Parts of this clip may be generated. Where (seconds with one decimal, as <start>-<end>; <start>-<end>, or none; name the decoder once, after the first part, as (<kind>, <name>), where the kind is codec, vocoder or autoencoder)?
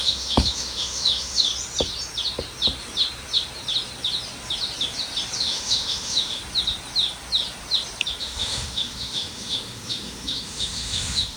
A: 0.0-1.5 (autoencoder, DAC-VAE); 5.4-6.4; 8.2-11.4